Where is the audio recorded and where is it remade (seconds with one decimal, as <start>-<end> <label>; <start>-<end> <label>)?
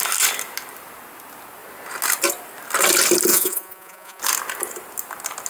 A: 0.0-3.3 recorded; 3.3-4.2 remade; 4.2-5.5 recorded